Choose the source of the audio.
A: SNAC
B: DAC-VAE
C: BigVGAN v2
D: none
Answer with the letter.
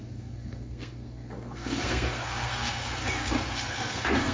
A